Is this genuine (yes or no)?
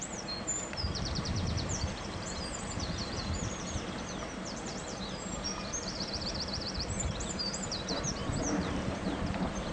no